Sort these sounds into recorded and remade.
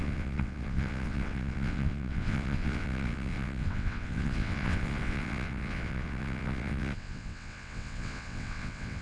remade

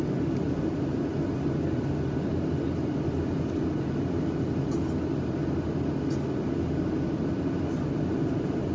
recorded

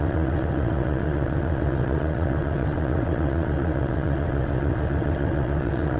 remade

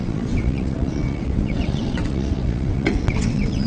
remade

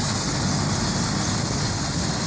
recorded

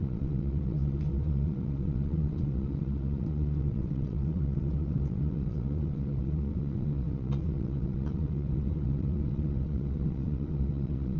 remade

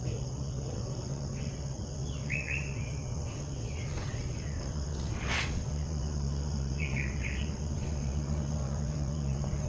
remade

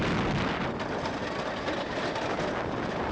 recorded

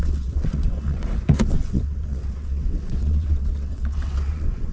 remade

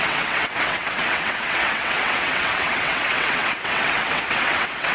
remade